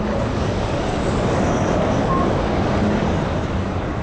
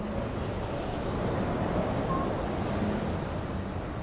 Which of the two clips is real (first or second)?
second